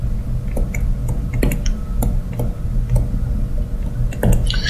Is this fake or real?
real